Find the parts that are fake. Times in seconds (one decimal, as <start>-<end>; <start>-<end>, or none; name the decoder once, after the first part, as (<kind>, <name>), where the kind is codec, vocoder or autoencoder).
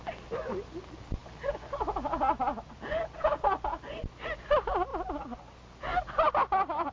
none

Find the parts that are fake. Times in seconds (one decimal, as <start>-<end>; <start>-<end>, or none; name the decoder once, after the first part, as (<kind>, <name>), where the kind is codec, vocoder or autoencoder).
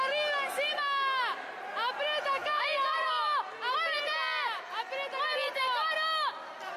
2.4-3.1 (vocoder, Vocos)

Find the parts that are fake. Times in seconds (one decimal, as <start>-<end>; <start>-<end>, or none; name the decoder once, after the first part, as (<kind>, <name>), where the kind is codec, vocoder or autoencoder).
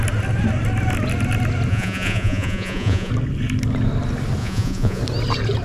1.7-3.1 (vocoder, Vocos); 4.4-5.0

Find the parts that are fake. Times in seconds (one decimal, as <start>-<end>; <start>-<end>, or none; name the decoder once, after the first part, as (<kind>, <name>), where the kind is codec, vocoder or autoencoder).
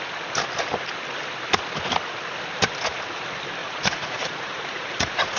3.6-5.4 (vocoder, Vocos)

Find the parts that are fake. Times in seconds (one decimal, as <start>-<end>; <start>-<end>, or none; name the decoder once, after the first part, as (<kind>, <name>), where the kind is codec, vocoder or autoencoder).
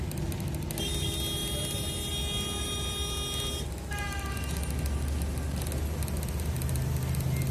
none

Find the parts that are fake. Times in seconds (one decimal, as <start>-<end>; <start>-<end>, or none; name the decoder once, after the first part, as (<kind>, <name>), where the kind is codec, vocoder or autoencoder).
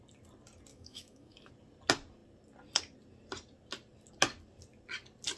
0.7-1.5 (autoencoder, DAC-VAE)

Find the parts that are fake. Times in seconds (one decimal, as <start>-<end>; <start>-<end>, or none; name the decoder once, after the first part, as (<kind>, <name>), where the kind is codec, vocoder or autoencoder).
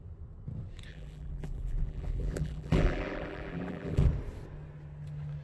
0.9-4.1 (vocoder, BigVGAN v2)